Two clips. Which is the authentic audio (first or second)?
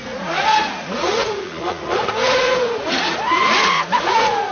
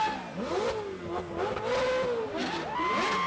second